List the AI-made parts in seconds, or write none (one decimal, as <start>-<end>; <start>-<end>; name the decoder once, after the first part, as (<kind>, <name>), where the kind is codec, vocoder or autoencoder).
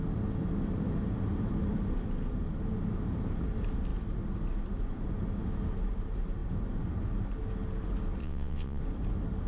8.2-8.8 (vocoder, WaveNeXt)